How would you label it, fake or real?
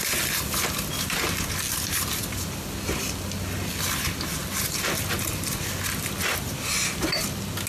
real